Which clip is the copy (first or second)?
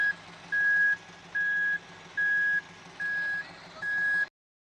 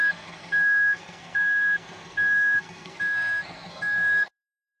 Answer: second